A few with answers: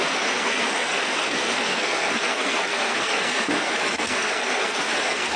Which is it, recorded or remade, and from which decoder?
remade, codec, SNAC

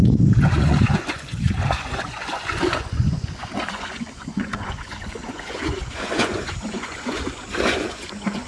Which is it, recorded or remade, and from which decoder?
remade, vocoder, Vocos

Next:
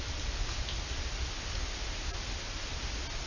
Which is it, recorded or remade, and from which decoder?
recorded